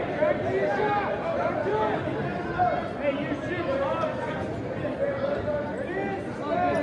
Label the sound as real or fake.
real